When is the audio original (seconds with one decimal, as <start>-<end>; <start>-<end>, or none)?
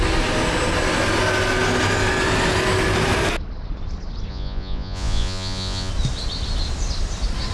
0.0-4.3; 5.9-7.5